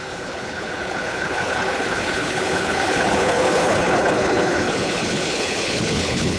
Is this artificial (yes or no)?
yes